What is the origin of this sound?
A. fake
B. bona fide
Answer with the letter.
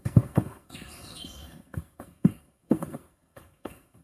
A